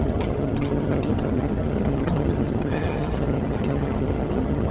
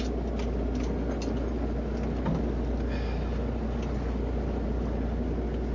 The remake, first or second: first